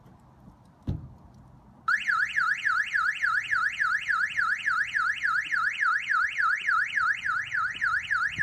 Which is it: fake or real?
real